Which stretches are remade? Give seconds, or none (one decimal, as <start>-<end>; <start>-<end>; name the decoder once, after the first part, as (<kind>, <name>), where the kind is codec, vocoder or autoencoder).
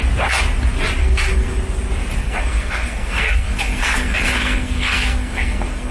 1.0-1.6 (codec, SNAC); 2.2-5.9